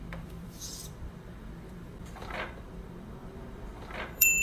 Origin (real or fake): fake